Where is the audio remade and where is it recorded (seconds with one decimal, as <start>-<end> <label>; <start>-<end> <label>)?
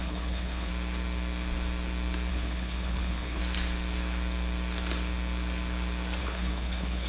0.0-0.7 remade; 0.7-2.3 recorded; 2.3-3.4 remade; 3.4-6.2 recorded; 6.2-7.1 remade